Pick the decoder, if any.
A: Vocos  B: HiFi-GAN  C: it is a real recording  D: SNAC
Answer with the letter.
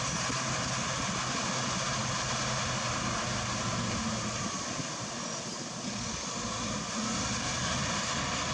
C